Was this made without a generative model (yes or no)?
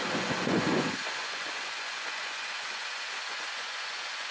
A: no